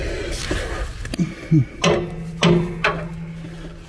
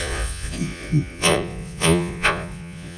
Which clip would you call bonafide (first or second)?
first